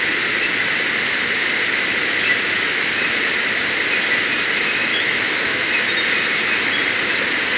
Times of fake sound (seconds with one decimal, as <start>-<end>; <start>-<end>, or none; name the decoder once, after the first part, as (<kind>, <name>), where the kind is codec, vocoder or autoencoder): 4.9-5.7 (autoencoder, DAC-VAE)